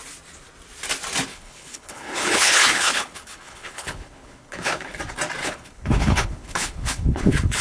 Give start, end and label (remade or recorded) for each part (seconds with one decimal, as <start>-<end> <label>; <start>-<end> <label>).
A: 0.0-1.3 recorded; 1.3-5.0 remade; 5.0-5.4 recorded; 5.4-7.6 remade